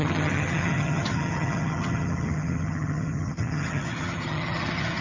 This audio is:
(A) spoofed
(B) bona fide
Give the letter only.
A